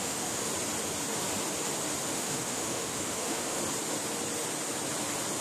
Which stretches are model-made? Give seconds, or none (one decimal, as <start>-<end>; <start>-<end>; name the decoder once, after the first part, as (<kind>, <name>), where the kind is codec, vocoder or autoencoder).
0.0-0.5 (autoencoder, DAC-VAE); 2.1-3.6